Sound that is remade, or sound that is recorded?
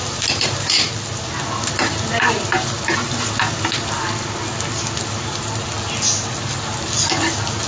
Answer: recorded